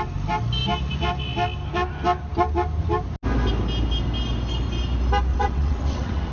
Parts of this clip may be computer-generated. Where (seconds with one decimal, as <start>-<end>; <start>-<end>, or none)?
5.3-6.3